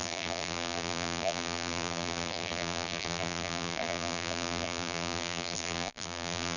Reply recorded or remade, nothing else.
remade